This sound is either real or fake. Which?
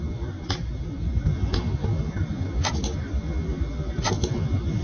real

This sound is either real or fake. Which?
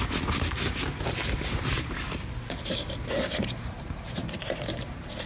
fake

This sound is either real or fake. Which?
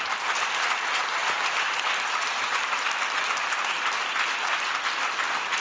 real